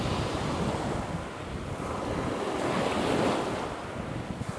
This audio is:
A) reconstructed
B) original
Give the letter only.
B